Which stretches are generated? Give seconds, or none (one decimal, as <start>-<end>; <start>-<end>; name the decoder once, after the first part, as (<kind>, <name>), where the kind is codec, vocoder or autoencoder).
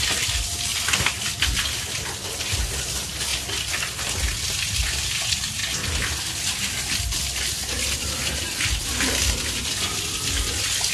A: none